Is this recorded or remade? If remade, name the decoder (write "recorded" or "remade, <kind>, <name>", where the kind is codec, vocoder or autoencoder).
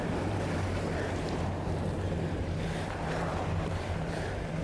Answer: remade, vocoder, BigVGAN v2